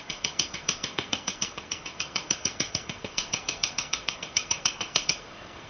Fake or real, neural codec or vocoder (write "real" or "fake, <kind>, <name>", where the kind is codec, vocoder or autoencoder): fake, codec, SNAC